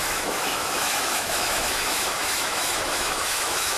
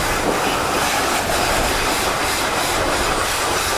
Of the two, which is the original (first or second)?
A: second